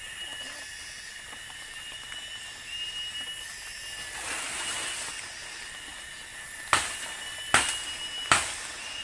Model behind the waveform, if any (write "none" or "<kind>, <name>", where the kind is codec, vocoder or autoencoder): none